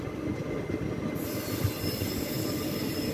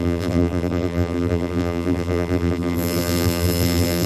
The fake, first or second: second